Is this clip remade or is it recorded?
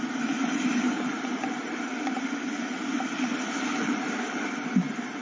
remade